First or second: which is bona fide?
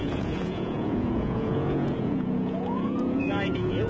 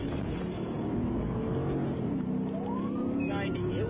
second